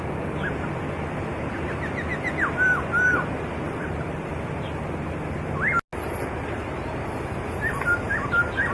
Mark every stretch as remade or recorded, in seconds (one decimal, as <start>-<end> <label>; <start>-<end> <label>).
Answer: 0.0-3.8 recorded; 3.8-4.3 remade; 4.3-8.7 recorded